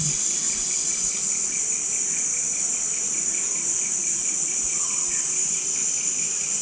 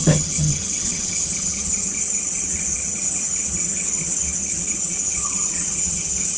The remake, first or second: second